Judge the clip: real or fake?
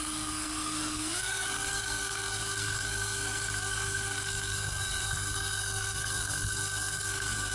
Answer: fake